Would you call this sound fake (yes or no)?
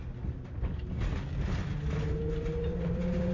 no